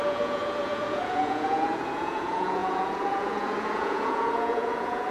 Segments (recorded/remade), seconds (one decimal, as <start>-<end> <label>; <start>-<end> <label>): 0.0-5.1 remade